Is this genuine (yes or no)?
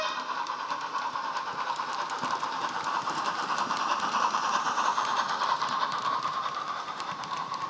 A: no